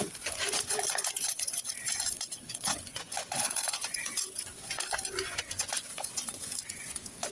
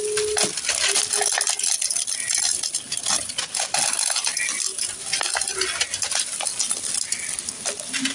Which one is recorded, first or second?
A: second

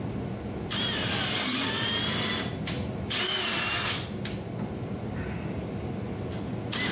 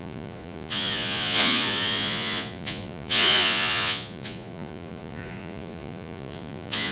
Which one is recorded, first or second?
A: first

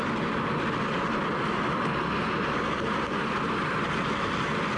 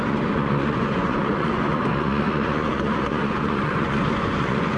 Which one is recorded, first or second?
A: first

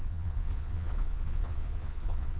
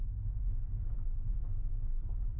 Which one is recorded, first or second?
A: second